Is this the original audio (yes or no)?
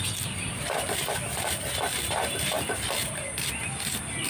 yes